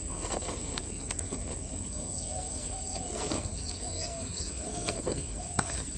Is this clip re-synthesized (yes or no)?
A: yes